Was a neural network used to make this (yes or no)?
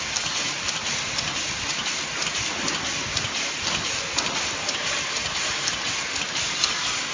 no